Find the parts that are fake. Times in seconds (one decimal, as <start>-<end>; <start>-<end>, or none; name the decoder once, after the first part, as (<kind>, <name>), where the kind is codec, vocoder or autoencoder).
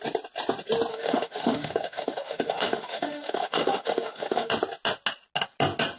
0.9-4.5 (autoencoder, DAC-VAE)